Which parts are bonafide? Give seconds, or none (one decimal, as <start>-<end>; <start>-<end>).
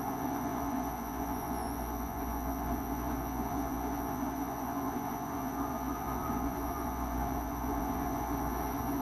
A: none